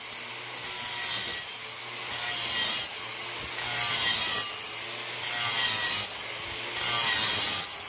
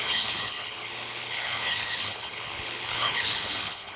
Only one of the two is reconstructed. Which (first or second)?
second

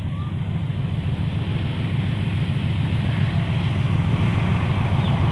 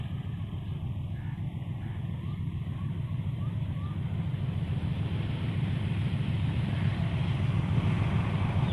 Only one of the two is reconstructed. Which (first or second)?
second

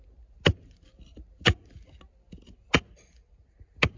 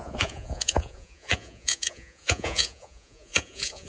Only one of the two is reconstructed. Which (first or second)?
second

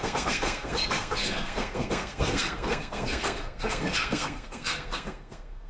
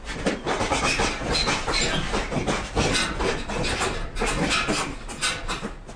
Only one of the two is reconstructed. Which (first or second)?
first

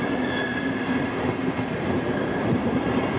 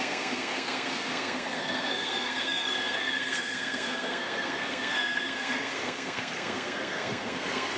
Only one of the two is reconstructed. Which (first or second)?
second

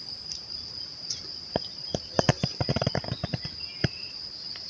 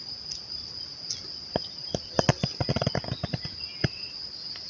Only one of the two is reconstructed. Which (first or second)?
first